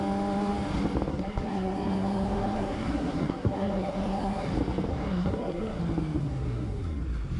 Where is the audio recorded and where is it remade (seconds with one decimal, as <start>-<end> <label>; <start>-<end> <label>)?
0.0-1.1 recorded; 1.1-4.5 remade; 4.5-4.9 recorded; 4.9-5.8 remade; 5.8-6.2 recorded; 6.2-7.0 remade; 7.0-7.4 recorded